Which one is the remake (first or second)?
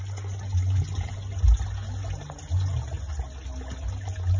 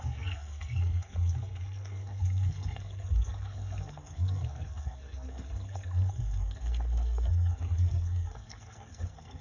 second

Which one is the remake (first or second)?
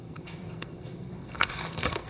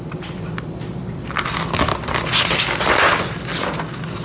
first